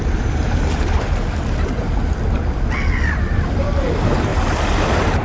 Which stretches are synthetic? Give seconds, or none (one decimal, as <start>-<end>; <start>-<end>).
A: 0.0-4.3